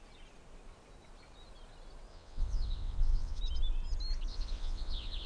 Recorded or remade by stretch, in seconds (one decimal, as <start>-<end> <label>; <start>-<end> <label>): 0.0-2.1 recorded; 2.1-3.4 remade; 3.4-4.3 recorded; 4.3-5.3 remade